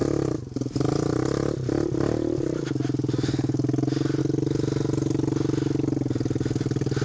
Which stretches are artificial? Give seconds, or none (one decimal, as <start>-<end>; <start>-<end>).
none